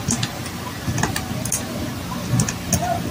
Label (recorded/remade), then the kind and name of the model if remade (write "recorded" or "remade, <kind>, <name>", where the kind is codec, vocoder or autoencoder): recorded